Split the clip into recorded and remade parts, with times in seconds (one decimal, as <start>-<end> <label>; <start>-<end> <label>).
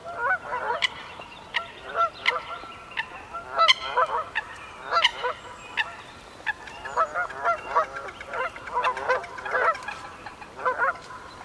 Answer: 0.0-0.7 recorded; 0.7-2.7 remade; 2.7-3.4 recorded; 3.4-5.1 remade; 5.1-8.4 recorded; 8.4-11.4 remade